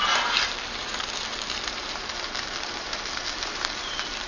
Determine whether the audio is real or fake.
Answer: fake